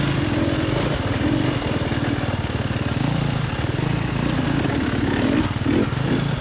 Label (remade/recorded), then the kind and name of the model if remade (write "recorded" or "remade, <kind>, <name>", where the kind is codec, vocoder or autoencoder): remade, vocoder, BigVGAN v2